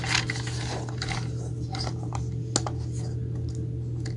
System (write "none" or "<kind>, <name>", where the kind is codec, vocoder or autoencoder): none